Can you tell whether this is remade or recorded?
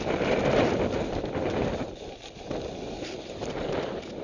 recorded